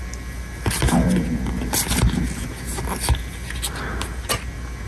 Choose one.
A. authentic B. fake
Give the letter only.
A